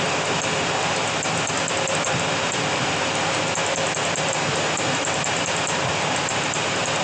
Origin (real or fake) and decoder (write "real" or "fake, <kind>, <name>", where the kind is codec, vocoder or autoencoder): real